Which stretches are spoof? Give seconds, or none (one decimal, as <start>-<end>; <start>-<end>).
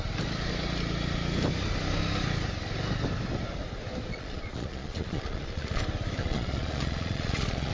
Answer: 4.1-5.8; 6.2-7.7